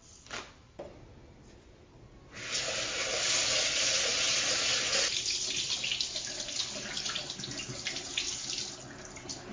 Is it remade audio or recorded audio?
recorded